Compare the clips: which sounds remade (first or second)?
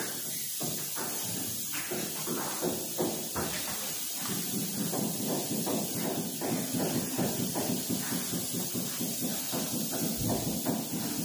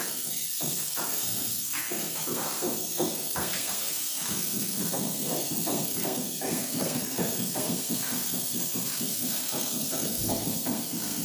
second